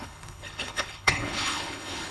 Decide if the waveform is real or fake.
fake